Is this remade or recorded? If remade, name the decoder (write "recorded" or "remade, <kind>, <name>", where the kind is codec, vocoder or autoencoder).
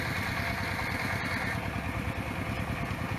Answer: recorded